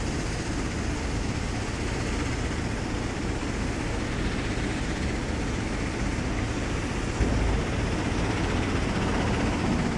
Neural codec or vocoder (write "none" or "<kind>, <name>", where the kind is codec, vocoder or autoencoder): none